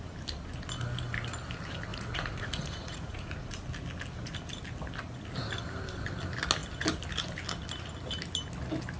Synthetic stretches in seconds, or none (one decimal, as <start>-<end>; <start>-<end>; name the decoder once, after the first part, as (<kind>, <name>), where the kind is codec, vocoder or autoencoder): 1.9-3.5 (vocoder, Vocos)